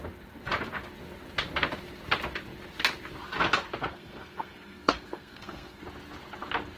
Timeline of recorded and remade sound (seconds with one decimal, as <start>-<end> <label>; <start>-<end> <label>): 0.0-3.9 recorded; 3.9-5.8 remade; 5.8-6.8 recorded